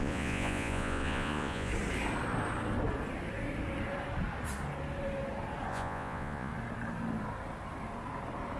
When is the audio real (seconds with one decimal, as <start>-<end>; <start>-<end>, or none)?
1.7-5.7; 6.5-8.6